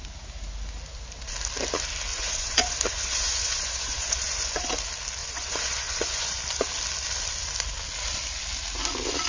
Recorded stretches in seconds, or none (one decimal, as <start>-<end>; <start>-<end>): 0.0-2.1; 4.7-5.2; 6.4-9.3